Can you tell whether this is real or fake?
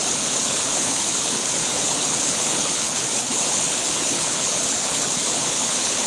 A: fake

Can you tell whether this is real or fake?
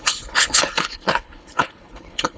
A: fake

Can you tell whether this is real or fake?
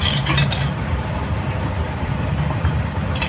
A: fake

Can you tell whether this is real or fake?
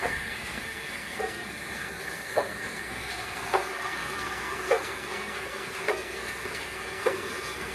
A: fake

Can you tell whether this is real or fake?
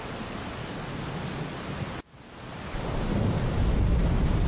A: real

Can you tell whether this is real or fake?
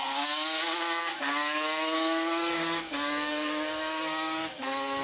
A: fake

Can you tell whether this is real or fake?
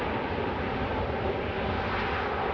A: real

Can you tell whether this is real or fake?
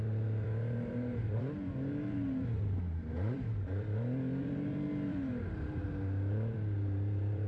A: fake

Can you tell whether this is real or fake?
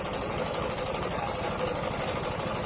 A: real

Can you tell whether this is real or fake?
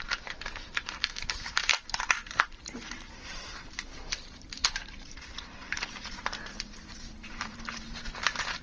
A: fake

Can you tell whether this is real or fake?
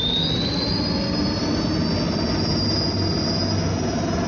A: real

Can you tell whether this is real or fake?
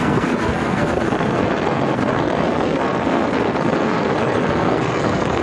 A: fake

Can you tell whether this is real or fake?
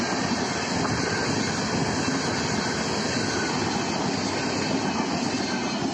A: real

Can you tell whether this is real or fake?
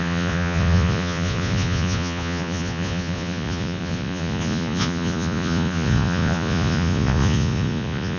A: fake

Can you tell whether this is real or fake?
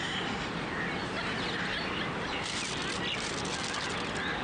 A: real